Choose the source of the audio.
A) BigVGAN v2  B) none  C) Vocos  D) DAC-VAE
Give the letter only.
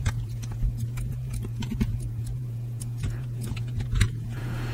C